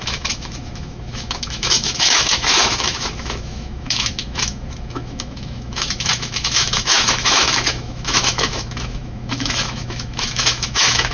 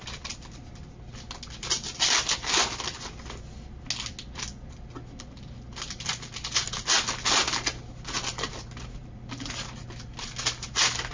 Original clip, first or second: second